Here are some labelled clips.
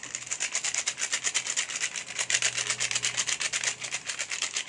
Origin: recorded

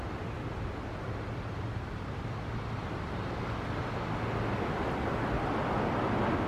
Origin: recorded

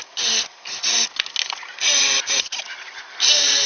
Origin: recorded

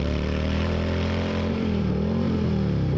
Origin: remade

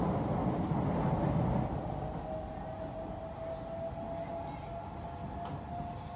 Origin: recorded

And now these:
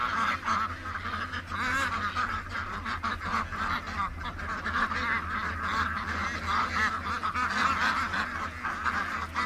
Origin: recorded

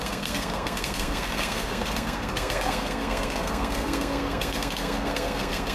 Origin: remade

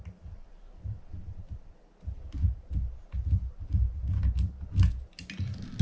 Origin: recorded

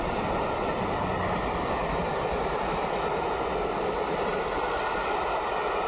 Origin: recorded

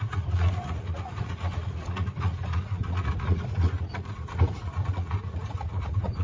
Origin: remade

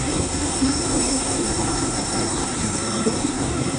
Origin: remade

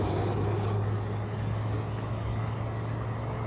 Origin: remade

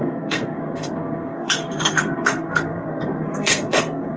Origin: remade